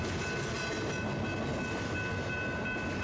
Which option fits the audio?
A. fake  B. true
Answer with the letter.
B